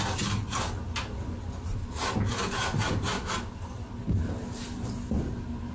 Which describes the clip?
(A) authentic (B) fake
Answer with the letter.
A